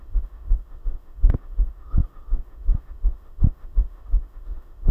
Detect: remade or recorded remade